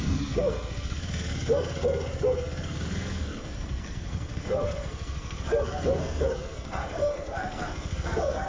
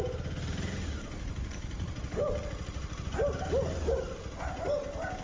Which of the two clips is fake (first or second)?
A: first